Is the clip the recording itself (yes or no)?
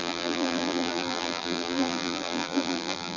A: no